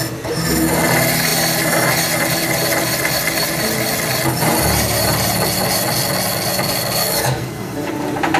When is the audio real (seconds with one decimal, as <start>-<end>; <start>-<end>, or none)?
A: 0.0-7.0; 7.9-8.4